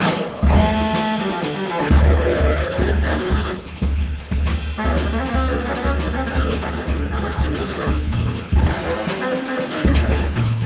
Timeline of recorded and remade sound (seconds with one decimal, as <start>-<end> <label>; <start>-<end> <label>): 0.0-0.6 remade; 0.6-1.8 recorded; 1.8-4.5 remade; 4.5-6.3 recorded; 6.3-8.8 remade; 8.8-9.7 recorded; 9.7-10.7 remade